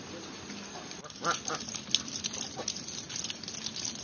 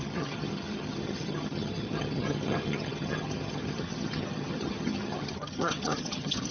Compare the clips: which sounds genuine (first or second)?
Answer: first